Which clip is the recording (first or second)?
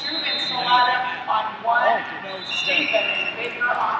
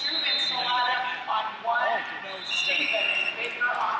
first